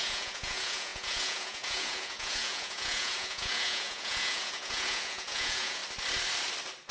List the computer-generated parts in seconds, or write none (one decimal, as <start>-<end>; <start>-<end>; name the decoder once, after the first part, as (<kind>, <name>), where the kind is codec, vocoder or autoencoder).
0.0-5.8 (vocoder, Vocos)